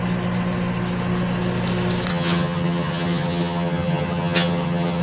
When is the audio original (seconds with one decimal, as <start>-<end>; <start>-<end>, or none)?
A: 0.0-2.1